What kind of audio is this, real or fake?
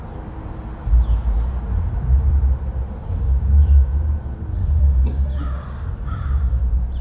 fake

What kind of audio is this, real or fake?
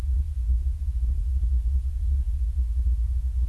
real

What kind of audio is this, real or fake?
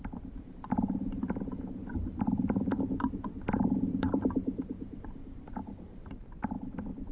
fake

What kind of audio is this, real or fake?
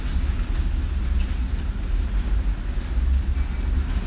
real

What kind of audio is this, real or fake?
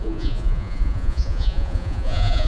fake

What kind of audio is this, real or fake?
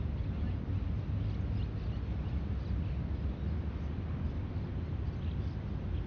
real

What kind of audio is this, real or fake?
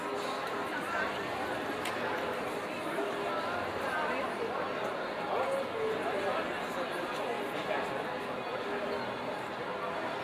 real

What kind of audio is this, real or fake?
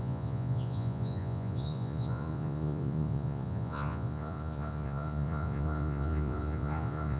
fake